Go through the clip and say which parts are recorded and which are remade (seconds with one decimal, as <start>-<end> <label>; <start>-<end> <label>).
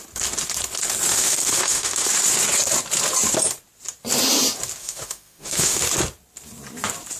0.0-1.1 recorded; 1.1-2.1 remade; 2.1-4.8 recorded; 4.8-5.8 remade; 5.8-7.2 recorded